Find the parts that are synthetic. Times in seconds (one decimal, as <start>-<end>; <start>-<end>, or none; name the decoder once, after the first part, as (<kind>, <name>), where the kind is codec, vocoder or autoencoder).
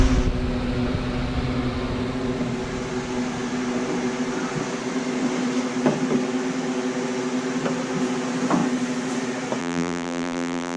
9.6-10.8 (vocoder, BigVGAN v2)